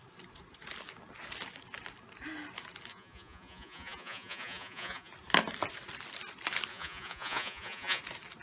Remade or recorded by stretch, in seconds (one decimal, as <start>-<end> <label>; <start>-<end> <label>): 0.0-2.9 recorded; 2.9-5.1 remade; 5.1-6.7 recorded; 6.7-8.0 remade; 8.0-8.4 recorded